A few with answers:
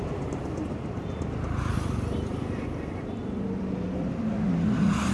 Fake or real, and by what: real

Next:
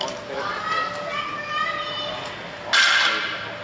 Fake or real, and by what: real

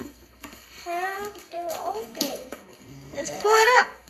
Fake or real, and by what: fake, codec, SNAC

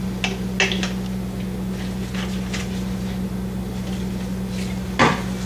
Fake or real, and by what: real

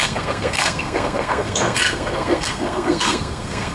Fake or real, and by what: fake, codec, SNAC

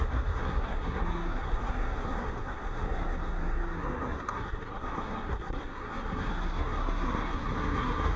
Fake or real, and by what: fake, codec, SNAC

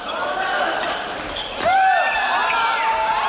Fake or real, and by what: real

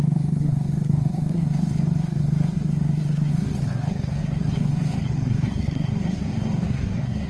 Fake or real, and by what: fake, codec, SNAC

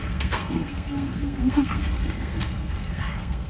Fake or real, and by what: fake, codec, SNAC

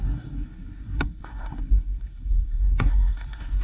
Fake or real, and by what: fake, codec, SNAC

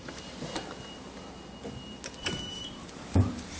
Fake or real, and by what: real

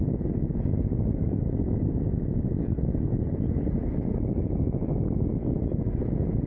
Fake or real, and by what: real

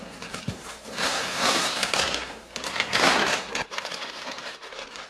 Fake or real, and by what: fake, codec, SNAC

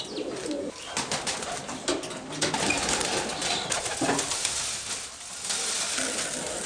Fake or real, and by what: real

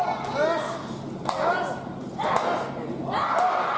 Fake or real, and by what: real